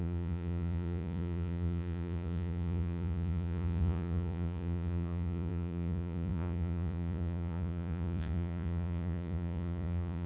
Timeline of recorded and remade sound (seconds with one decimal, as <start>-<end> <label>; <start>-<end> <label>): 0.0-10.3 remade